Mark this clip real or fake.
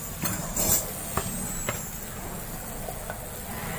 real